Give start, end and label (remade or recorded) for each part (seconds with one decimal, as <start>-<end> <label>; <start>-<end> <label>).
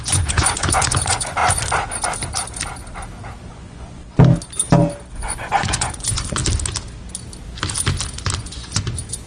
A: 0.0-1.4 remade; 1.4-3.5 recorded; 3.5-4.0 remade; 4.0-5.1 recorded; 5.1-6.4 remade; 6.4-8.4 recorded; 8.4-9.3 remade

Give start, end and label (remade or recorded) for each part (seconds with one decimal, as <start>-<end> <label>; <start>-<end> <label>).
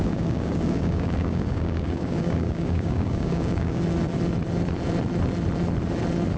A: 0.0-3.8 remade; 3.8-6.4 recorded